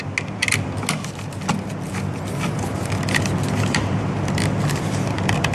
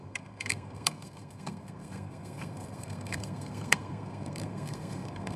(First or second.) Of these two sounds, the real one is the first